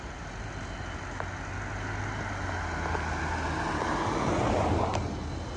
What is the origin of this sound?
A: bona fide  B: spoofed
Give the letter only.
A